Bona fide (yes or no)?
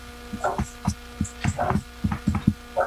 yes